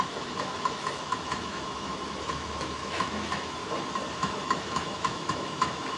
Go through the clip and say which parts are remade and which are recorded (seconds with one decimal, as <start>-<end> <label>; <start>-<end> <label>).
0.0-3.6 remade; 3.6-4.1 recorded; 4.1-6.0 remade